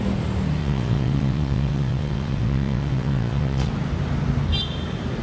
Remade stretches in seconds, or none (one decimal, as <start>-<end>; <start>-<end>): 0.6-3.7